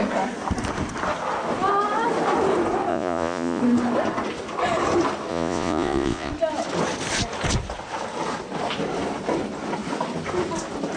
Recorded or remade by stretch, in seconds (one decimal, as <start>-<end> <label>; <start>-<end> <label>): 0.0-2.9 recorded; 2.9-3.6 remade; 3.6-5.3 recorded; 5.3-6.3 remade; 6.3-11.0 recorded